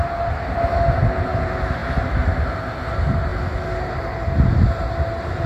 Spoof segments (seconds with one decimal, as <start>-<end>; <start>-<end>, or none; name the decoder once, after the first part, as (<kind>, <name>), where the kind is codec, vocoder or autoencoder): none